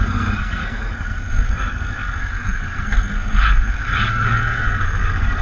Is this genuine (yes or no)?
no